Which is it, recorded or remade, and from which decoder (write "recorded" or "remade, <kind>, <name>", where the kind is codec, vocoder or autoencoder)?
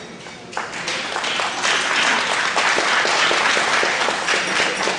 recorded